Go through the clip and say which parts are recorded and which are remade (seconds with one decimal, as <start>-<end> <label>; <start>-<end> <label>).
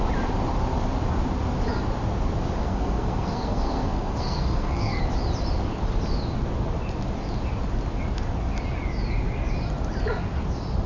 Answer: 0.0-2.6 recorded; 2.6-5.0 remade; 5.0-10.9 recorded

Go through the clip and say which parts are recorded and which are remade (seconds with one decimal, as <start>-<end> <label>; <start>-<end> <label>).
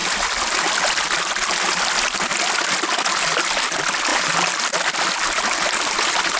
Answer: 0.0-6.4 recorded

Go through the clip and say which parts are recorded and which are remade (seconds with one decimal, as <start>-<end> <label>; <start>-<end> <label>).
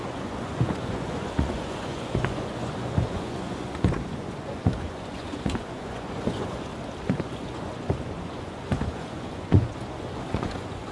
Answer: 0.0-6.7 remade; 6.7-7.2 recorded; 7.2-10.9 remade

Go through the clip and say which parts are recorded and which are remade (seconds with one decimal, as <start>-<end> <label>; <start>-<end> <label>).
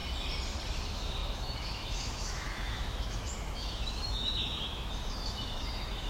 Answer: 0.0-0.7 recorded; 0.7-6.1 remade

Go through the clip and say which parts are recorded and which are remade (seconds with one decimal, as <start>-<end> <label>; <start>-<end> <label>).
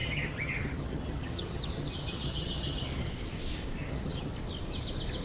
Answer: 0.0-3.1 remade; 3.1-3.8 recorded; 3.8-4.3 remade; 4.3-5.2 recorded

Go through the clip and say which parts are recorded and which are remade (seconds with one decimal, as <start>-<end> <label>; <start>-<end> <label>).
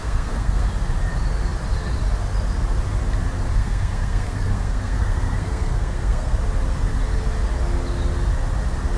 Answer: 0.0-0.7 remade; 0.7-3.5 recorded; 3.5-6.4 remade; 6.4-9.0 recorded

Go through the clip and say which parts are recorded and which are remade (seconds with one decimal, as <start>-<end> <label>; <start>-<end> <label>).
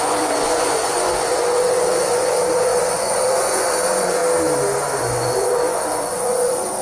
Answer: 0.0-4.2 remade; 4.2-4.9 recorded; 4.9-6.8 remade